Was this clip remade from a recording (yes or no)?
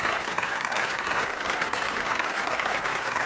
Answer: yes